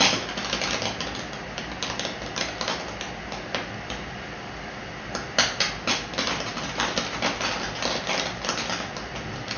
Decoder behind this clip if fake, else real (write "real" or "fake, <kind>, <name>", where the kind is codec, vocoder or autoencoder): real